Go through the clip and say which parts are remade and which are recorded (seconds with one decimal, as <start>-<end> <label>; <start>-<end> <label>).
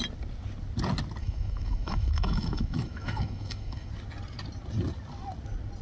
0.0-1.2 recorded; 1.2-3.9 remade; 3.9-5.8 recorded